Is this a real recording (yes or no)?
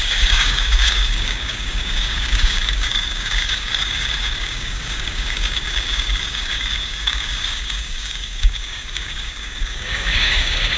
no